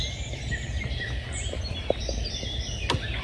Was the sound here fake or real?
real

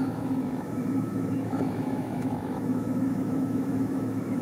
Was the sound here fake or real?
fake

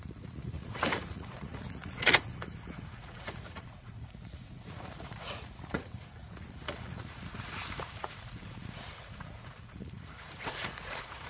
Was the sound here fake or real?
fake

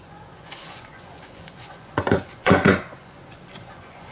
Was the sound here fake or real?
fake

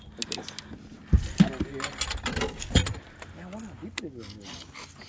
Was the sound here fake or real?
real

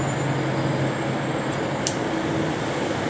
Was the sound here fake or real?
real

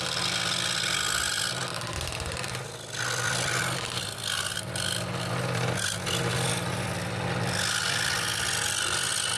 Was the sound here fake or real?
real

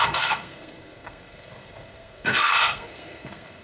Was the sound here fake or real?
fake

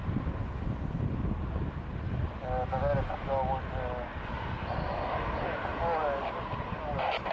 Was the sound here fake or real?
real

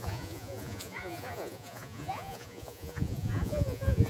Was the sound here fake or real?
fake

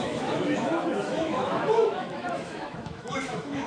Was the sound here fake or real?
fake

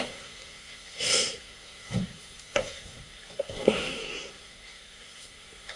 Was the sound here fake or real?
fake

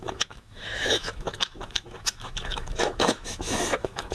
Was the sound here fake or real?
fake